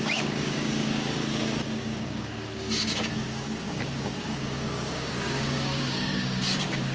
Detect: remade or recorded remade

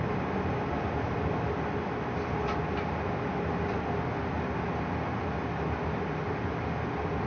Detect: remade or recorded recorded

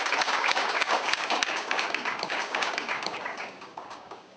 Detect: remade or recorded remade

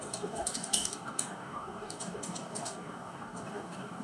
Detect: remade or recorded remade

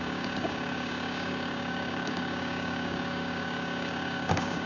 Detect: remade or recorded remade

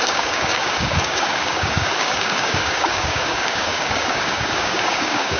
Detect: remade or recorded remade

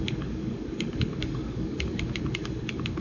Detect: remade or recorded remade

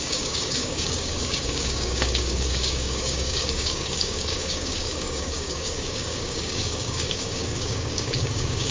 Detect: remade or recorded remade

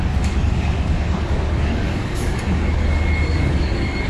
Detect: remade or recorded remade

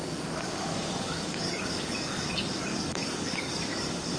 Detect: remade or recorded remade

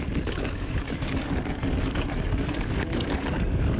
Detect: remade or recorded remade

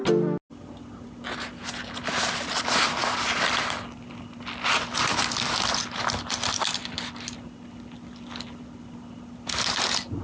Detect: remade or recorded recorded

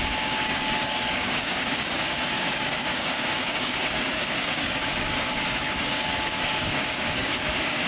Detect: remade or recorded remade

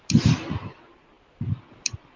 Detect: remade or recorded recorded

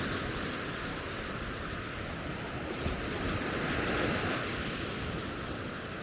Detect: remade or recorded recorded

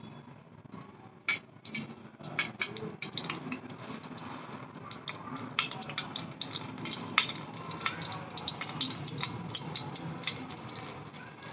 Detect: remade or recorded recorded